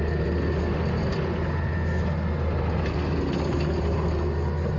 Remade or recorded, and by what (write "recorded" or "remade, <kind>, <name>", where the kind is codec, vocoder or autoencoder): recorded